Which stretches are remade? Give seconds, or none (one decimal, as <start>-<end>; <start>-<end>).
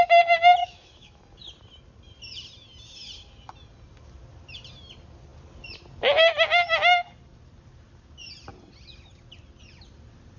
0.6-1.2